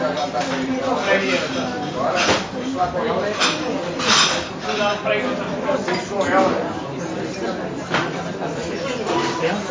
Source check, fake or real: real